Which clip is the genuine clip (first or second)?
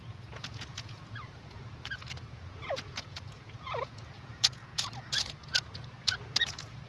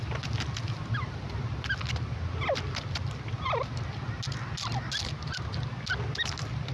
second